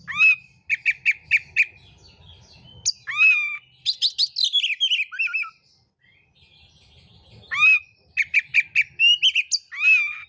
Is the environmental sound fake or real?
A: real